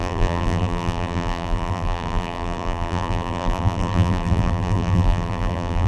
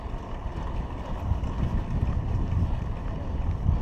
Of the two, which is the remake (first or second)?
first